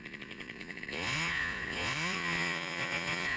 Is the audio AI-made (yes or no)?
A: yes